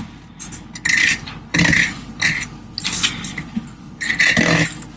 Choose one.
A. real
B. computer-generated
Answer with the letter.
A